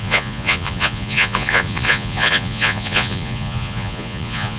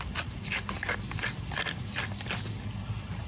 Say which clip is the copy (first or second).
first